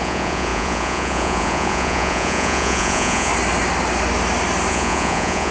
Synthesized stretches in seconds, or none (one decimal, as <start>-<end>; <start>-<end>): 0.0-3.3; 4.7-5.5

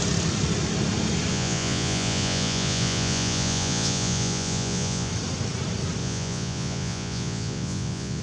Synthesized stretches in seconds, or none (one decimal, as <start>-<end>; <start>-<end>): 1.3-5.1; 6.0-8.2

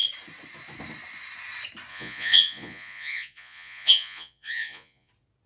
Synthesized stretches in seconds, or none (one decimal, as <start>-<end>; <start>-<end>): 1.9-5.1

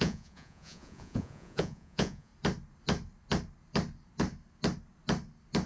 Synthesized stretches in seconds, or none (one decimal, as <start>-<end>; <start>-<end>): 0.0-2.3

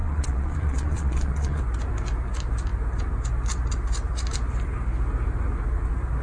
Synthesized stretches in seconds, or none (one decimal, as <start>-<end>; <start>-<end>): 0.0-1.6

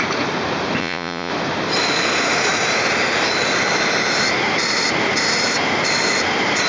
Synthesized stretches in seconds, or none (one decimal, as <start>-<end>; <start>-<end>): 0.8-1.3

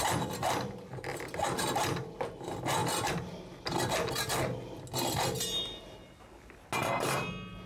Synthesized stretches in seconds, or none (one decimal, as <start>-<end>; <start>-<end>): none